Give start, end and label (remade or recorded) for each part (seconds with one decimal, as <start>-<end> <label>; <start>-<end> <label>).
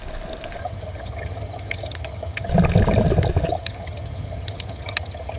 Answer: 0.0-0.6 recorded; 0.6-2.5 remade; 2.5-3.5 recorded; 3.5-5.4 remade